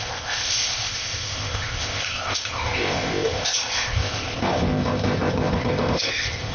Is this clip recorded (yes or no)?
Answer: no